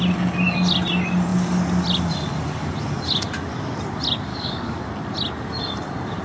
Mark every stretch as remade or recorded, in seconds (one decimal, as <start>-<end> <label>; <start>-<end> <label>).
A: 0.0-4.3 recorded; 4.3-4.8 remade; 4.8-6.2 recorded

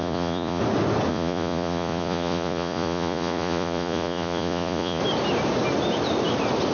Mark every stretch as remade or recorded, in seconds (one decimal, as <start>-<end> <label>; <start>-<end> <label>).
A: 0.0-0.6 remade; 0.6-1.1 recorded; 1.1-5.0 remade; 5.0-6.7 recorded

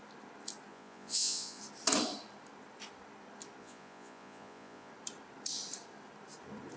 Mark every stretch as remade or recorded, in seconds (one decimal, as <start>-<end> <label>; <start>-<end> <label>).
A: 0.0-0.7 recorded; 0.7-1.6 remade; 1.6-3.6 recorded; 3.6-4.9 remade; 4.9-6.8 recorded